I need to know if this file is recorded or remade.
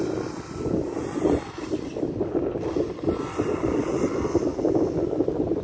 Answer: recorded